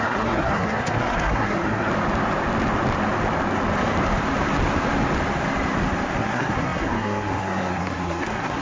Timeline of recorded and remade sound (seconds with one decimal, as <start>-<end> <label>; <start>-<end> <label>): 0.0-1.9 remade; 1.9-6.2 recorded; 6.2-8.6 remade